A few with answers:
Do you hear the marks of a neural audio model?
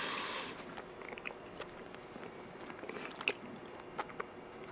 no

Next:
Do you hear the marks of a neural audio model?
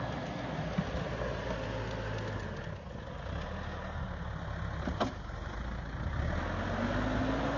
no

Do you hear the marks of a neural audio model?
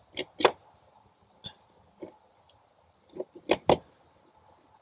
no